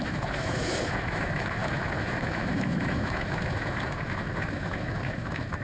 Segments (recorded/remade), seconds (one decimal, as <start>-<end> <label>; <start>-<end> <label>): 0.0-5.6 remade